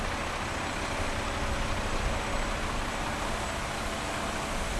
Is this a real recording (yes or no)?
yes